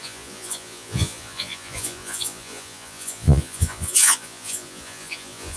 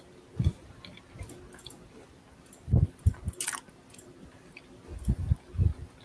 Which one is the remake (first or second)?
first